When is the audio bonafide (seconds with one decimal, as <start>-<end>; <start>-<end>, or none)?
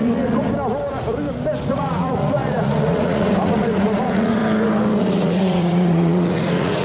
0.5-1.7; 4.4-5.0